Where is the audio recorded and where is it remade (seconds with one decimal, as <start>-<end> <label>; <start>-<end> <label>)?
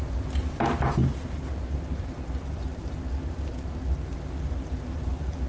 0.0-5.5 recorded